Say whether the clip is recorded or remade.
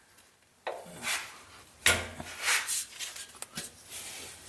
recorded